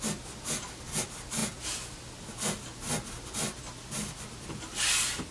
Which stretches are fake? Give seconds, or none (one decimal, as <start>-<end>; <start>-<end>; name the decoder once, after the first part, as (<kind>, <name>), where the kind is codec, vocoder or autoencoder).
none